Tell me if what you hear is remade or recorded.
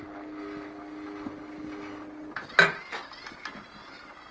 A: recorded